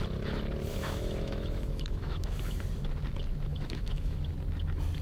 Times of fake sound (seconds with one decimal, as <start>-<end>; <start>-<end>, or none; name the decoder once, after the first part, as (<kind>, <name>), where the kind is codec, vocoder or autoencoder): 0.7-2.6 (autoencoder, DAC-VAE); 3.5-4.2